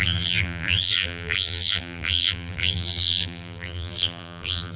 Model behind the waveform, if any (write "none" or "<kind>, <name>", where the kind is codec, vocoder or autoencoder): vocoder, BigVGAN v2